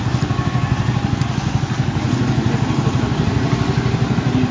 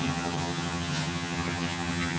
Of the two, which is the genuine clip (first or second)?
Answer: first